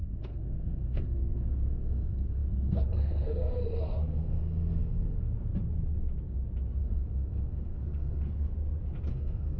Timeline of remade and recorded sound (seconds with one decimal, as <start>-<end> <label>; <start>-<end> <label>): 0.0-5.5 remade; 5.5-6.8 recorded; 6.8-8.5 remade; 8.5-9.1 recorded; 9.1-9.6 remade